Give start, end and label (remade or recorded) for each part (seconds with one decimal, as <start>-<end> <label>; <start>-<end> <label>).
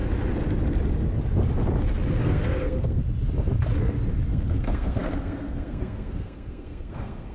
0.0-2.2 recorded; 2.2-3.0 remade; 3.0-4.3 recorded; 4.3-7.3 remade